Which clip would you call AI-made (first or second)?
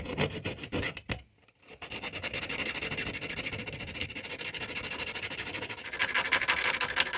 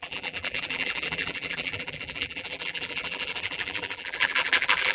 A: second